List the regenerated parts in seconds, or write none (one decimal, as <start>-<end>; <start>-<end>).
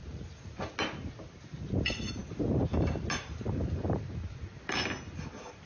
none